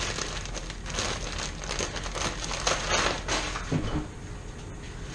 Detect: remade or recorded recorded